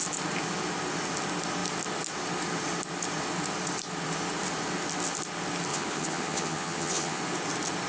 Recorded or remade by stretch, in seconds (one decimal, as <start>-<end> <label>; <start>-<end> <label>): 0.0-5.7 recorded; 5.7-7.2 remade; 7.2-7.9 recorded